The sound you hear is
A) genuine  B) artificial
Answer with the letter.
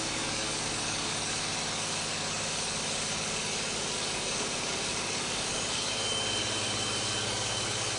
B